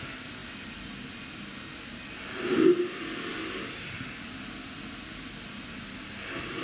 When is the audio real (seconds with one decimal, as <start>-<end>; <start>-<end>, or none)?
0.0-6.6